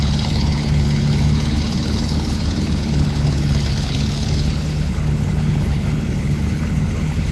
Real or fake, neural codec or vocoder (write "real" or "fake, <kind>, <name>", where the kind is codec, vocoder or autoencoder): fake, codec, HILCodec